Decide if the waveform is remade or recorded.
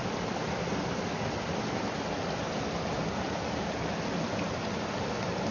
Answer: recorded